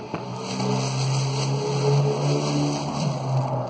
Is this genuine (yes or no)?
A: yes